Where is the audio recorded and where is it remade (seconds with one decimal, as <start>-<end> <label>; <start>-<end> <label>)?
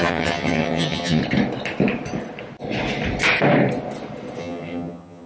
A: 0.0-1.2 remade; 1.2-4.4 recorded; 4.4-5.3 remade